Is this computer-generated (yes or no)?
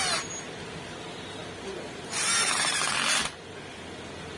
no